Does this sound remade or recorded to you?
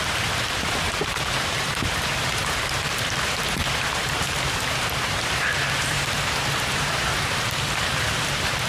remade